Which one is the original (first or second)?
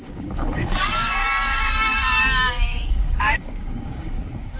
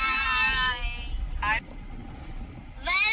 second